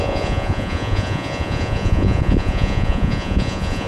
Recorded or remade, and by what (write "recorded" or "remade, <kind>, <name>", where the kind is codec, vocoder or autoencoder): remade, vocoder, Vocos